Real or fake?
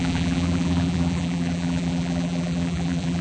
fake